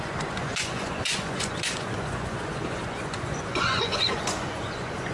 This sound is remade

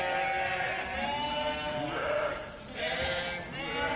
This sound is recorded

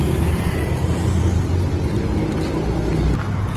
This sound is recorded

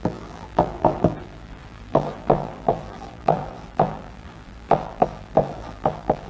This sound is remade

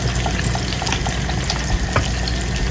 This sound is recorded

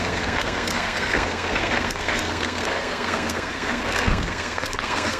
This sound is remade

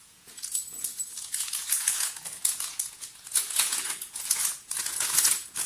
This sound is remade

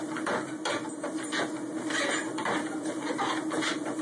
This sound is recorded